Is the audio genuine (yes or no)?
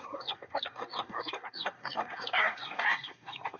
no